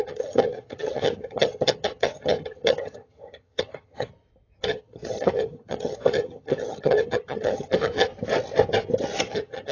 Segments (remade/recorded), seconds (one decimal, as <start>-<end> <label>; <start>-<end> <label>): 0.0-4.1 remade; 4.1-4.7 recorded; 4.7-8.1 remade; 8.1-9.2 recorded; 9.2-9.7 remade